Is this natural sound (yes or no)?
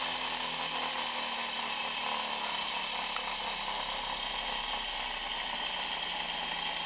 yes